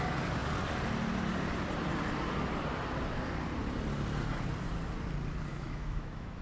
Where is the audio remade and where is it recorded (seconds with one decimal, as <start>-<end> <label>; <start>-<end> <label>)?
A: 0.0-5.5 recorded; 5.5-6.4 remade